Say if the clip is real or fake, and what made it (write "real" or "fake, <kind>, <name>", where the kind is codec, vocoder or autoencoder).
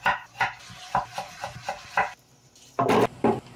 real